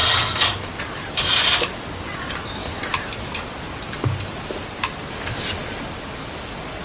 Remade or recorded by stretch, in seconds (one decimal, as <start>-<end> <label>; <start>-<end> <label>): 0.0-6.8 recorded